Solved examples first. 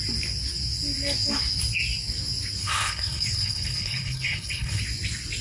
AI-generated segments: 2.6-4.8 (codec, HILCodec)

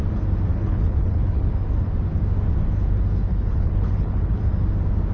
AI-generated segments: 0.5-1.5 (codec, HILCodec); 3.3-4.4

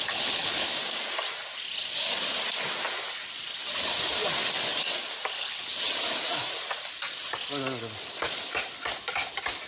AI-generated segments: 0.0-0.7 (codec, HILCodec); 5.3-5.7

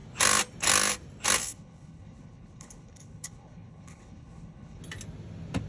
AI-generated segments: 1.4-4.8 (codec, HILCodec)

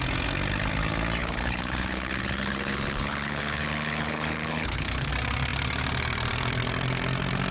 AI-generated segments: 1.2-5.1 (codec, HILCodec)

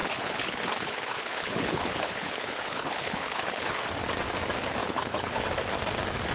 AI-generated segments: 0.0-3.8 (codec, HILCodec); 4.8-5.4